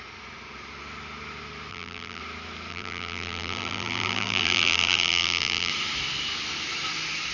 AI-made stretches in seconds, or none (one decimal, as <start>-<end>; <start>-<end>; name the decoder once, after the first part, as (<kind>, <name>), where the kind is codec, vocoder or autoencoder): 1.7-2.2 (vocoder, BigVGAN v2); 2.7-5.7